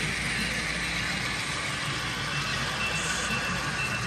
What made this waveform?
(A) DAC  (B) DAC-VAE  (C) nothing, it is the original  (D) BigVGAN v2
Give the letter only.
C